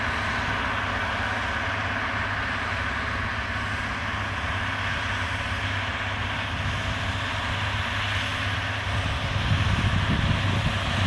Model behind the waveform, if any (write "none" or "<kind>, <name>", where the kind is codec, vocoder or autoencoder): none